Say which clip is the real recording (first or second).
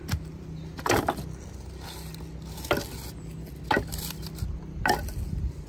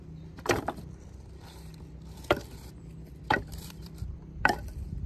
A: first